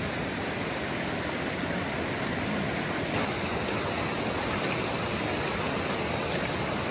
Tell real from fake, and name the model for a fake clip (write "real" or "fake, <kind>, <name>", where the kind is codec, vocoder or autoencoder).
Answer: real